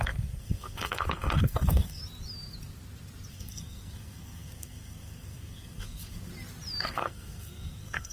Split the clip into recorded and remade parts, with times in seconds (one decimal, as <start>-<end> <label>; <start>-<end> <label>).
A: 0.0-2.0 remade; 2.0-3.3 recorded; 3.3-6.3 remade; 6.3-6.8 recorded; 6.8-8.1 remade